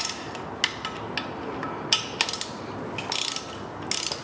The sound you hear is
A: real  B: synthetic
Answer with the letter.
A